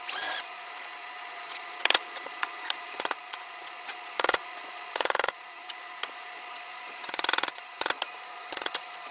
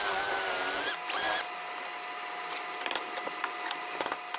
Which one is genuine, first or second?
second